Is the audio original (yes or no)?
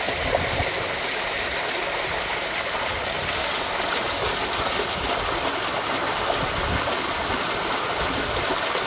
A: yes